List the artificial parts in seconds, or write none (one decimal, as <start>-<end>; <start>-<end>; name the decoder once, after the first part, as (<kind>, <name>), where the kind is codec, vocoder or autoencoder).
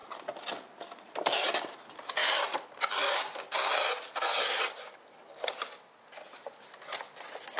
2.2-3.7 (vocoder, BigVGAN v2); 5.5-6.6